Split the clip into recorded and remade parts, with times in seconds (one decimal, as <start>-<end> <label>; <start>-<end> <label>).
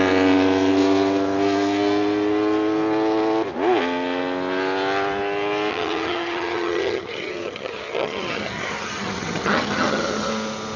0.0-5.7 recorded; 5.7-10.3 remade; 10.3-10.8 recorded